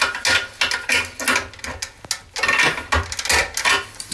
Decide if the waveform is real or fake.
real